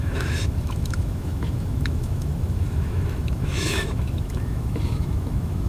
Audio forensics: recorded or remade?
remade